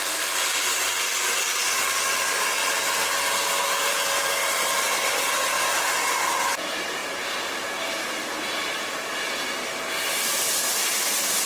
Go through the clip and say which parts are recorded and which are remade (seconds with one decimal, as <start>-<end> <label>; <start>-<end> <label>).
0.0-7.0 remade; 7.0-11.5 recorded